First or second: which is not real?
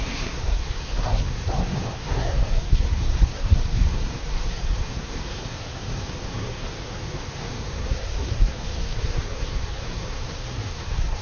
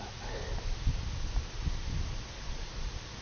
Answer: first